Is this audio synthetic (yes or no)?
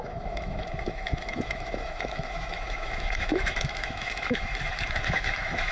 yes